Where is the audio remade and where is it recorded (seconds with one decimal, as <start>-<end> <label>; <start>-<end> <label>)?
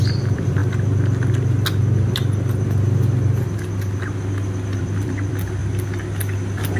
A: 0.0-0.6 remade; 0.6-4.7 recorded; 4.7-5.6 remade; 5.6-6.8 recorded